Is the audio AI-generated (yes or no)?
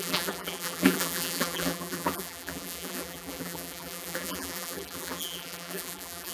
yes